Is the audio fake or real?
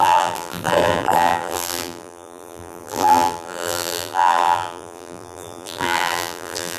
fake